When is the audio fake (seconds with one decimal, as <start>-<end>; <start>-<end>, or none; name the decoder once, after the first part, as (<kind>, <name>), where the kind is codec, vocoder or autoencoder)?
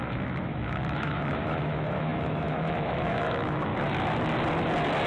0.0-3.7 (autoencoder, DAC-VAE)